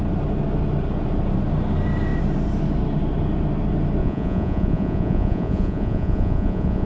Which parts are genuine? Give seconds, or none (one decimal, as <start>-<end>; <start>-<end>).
0.0-4.0